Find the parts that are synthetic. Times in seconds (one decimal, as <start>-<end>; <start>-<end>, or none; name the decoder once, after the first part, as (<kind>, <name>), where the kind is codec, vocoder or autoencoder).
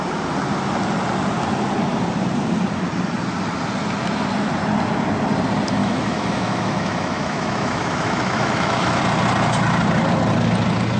5.8-9.0 (autoencoder, DAC-VAE)